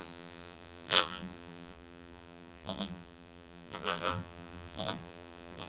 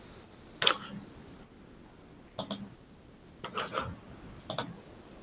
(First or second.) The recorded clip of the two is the second